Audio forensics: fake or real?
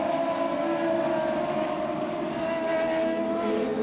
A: real